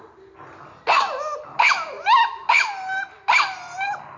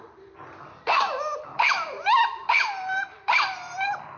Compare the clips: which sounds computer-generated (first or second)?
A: second